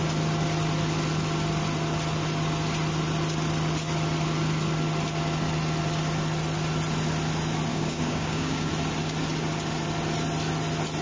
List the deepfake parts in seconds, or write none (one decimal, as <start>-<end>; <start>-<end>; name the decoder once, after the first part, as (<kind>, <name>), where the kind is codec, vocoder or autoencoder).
7.7-8.7 (codec, DAC)